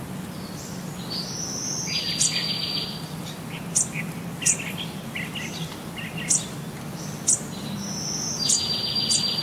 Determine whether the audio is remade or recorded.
recorded